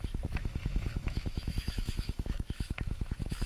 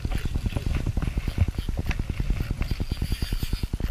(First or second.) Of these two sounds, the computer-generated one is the first